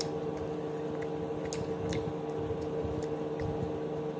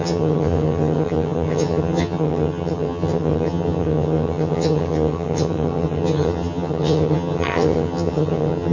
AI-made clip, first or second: second